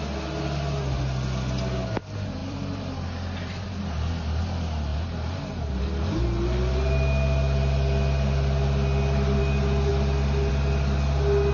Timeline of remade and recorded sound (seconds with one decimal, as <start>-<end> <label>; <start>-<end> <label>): 0.0-2.4 recorded; 2.4-4.4 remade; 4.4-11.5 recorded